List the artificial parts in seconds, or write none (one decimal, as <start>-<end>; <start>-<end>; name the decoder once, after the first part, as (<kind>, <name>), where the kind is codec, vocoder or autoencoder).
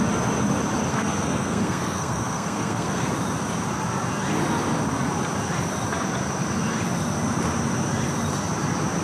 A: 0.9-3.1 (codec, SNAC)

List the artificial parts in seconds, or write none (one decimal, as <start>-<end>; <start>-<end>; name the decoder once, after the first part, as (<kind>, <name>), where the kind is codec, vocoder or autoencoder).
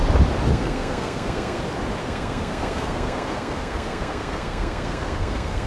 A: 0.5-1.6 (codec, SNAC); 2.0-5.7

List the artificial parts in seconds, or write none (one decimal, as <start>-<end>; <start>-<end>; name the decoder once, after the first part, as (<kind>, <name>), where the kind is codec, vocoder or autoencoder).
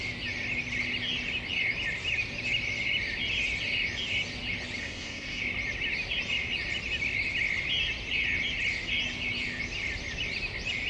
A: 4.8-5.4 (codec, SNAC)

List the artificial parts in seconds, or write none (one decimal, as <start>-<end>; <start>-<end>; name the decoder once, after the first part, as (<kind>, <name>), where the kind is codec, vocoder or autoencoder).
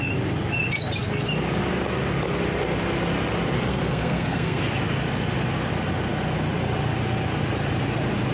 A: 3.7-4.6 (codec, SNAC)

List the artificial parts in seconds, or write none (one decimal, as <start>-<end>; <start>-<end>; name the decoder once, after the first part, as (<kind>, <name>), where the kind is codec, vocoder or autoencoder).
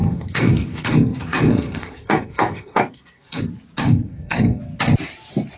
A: 0.0-3.4 (codec, SNAC); 3.8-4.6